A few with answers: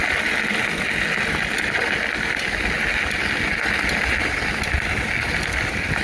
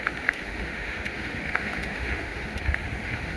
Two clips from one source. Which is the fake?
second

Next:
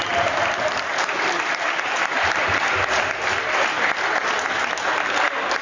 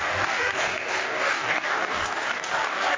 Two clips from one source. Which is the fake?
second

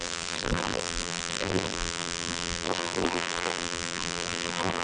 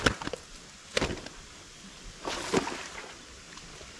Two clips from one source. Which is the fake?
first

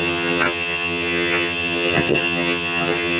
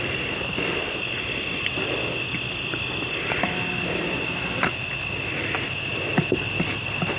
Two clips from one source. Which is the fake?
first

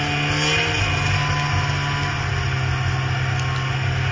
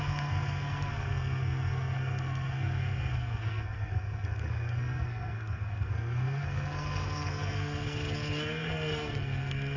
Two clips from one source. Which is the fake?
second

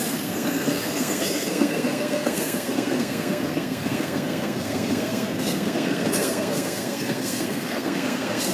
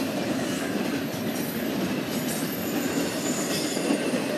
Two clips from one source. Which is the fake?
first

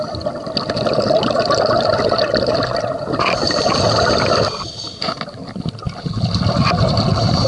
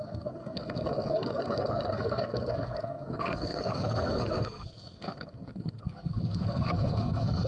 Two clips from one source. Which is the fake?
second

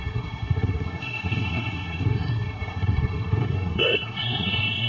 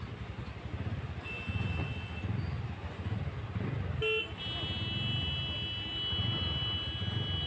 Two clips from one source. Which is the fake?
first